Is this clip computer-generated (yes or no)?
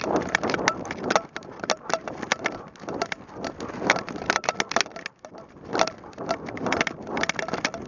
no